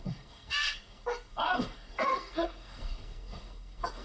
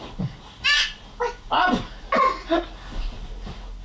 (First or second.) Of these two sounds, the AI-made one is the first